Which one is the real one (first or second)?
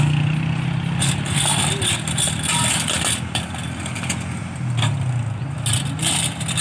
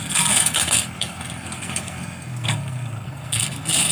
first